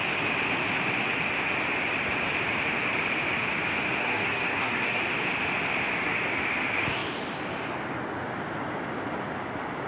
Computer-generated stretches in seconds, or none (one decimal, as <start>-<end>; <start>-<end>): 4.0-5.0